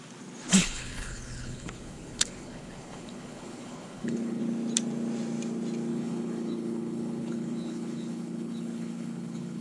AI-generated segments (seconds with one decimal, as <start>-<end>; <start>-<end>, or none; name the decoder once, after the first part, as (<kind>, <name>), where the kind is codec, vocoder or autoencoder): 0.6-4.4 (codec, HILCodec); 5.9-9.6